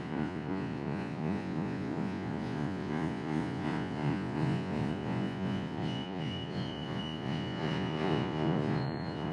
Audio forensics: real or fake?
fake